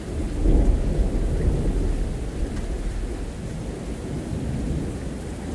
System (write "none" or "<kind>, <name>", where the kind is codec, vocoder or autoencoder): none